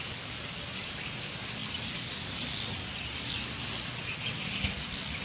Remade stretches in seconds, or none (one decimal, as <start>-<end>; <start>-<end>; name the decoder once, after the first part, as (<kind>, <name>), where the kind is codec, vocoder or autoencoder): none